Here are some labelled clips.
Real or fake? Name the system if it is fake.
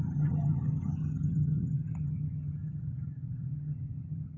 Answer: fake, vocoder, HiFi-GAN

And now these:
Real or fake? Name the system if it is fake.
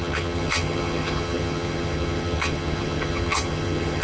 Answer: fake, vocoder, HiFi-GAN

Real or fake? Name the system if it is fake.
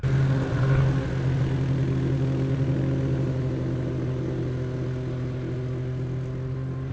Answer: real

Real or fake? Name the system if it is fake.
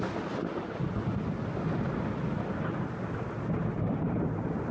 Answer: real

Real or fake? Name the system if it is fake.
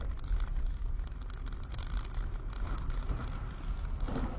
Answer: real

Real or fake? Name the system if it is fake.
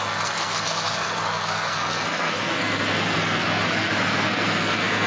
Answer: fake, codec, SNAC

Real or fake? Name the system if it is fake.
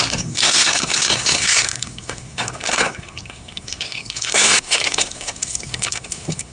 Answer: fake, codec, SNAC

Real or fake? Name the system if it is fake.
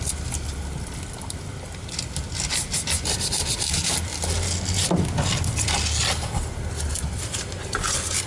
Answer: real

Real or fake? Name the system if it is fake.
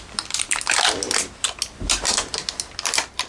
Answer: real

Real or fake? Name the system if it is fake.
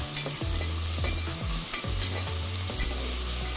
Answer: real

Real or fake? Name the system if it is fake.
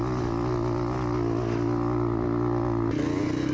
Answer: real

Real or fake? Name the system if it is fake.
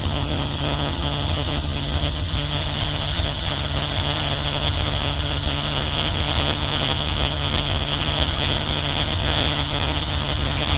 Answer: fake, vocoder, HiFi-GAN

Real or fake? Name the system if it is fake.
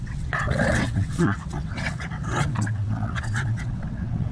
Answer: fake, vocoder, WaveNeXt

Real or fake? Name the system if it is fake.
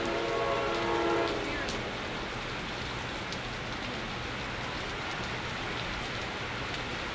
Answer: real